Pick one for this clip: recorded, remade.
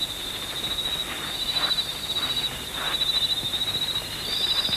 recorded